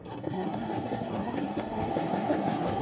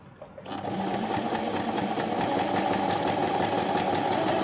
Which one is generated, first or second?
first